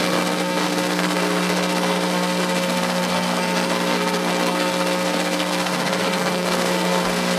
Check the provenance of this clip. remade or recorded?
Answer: remade